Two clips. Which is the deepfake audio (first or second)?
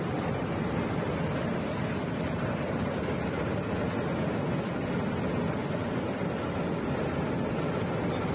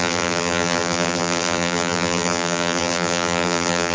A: second